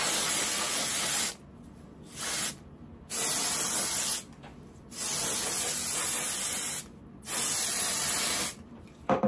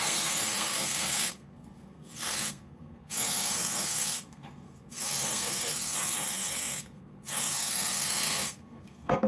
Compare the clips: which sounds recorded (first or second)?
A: first